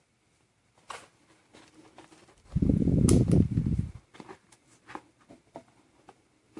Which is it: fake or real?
real